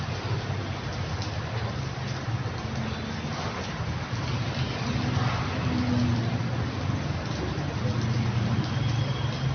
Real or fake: real